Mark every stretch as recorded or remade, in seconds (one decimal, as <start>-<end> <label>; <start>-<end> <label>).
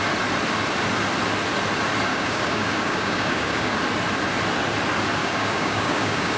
0.0-2.1 recorded; 2.1-3.8 remade; 3.8-5.2 recorded; 5.2-6.4 remade